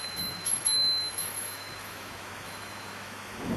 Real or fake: fake